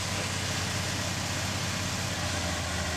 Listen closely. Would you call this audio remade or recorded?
recorded